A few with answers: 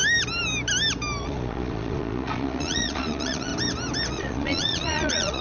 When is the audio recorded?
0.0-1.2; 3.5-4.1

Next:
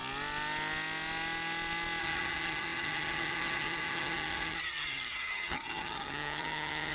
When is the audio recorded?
0.0-2.0

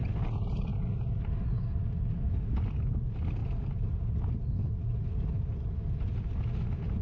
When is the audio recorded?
0.0-3.4; 4.4-7.0

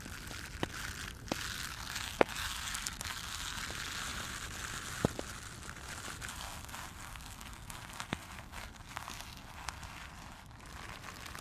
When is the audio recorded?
0.0-1.7; 3.6-6.3; 10.6-11.4